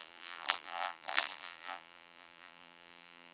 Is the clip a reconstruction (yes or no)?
yes